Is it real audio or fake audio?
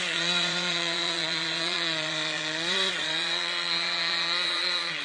fake